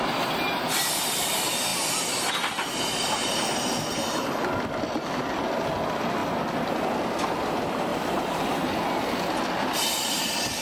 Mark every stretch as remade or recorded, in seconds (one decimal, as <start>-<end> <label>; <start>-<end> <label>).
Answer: 0.0-3.2 recorded; 3.2-4.3 remade; 4.3-7.9 recorded; 7.9-8.7 remade; 8.7-10.6 recorded